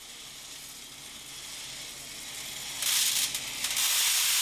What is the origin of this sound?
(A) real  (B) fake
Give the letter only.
A